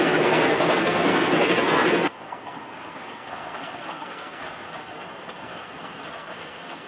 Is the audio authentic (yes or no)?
no